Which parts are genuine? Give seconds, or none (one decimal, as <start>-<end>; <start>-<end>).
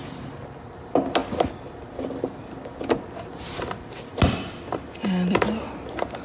0.0-6.2